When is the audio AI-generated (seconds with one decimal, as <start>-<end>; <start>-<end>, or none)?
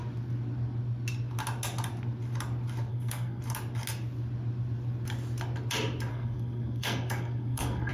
2.9-3.4; 6.1-7.9